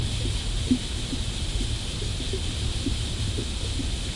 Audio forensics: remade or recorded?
recorded